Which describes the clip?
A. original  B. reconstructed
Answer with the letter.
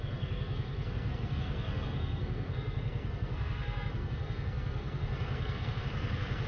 B